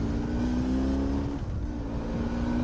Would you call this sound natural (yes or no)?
yes